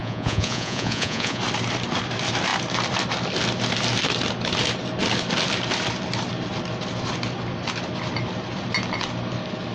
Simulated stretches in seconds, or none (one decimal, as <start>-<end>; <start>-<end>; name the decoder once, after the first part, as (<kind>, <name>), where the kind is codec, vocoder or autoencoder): 0.0-1.4 (vocoder, Vocos)